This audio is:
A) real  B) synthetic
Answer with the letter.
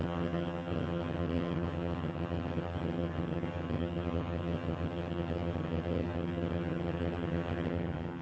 B